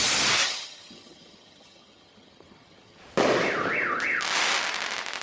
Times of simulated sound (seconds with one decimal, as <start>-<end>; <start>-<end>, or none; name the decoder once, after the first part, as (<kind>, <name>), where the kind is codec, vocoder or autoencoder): 0.4-3.0 (vocoder, HiFi-GAN)